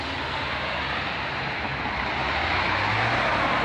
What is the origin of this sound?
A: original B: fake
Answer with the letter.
A